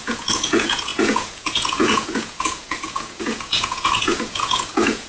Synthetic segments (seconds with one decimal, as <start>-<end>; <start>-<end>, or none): 0.0-5.1